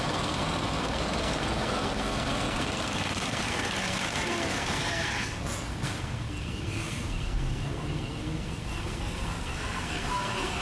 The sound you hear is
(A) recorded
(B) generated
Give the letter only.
B